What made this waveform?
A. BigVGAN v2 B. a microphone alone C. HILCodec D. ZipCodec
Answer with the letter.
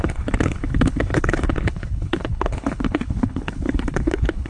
C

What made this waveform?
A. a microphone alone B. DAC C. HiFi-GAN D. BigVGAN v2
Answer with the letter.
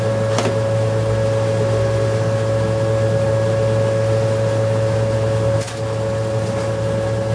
A